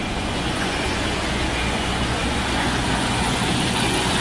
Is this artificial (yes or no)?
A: yes